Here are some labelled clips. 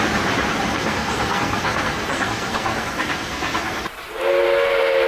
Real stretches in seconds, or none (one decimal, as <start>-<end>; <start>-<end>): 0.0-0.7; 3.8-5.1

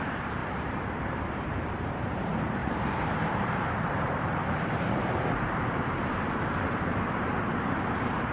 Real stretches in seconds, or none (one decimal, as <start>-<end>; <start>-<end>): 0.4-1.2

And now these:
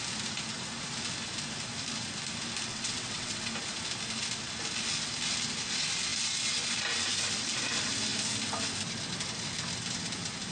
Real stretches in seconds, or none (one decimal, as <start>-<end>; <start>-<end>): 0.0-2.7; 3.5-10.5

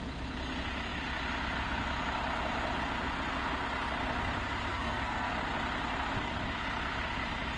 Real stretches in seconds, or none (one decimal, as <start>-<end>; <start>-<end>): 0.0-4.7; 5.3-7.6

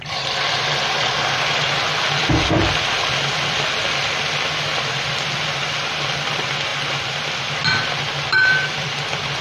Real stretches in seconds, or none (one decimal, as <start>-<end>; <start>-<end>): 6.7-7.9

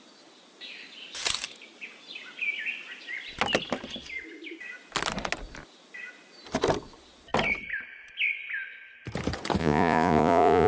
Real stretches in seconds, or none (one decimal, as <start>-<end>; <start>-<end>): 0.0-9.6

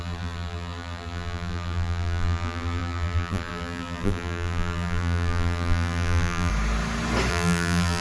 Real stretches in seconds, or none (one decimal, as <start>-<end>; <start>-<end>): 6.5-7.3